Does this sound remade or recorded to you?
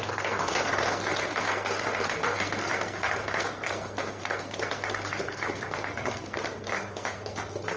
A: remade